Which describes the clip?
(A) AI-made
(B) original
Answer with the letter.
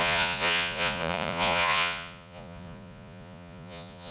A